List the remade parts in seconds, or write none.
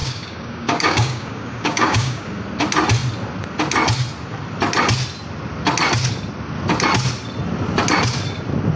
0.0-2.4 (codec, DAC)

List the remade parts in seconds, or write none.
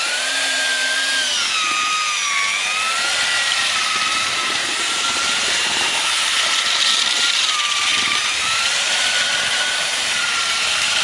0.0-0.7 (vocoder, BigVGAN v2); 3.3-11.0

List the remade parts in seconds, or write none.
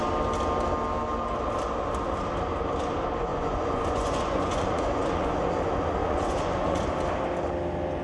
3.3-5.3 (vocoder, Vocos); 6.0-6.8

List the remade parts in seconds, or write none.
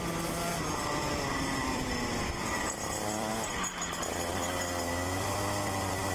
0.0-0.5 (vocoder, BigVGAN v2); 1.3-3.3; 5.2-6.1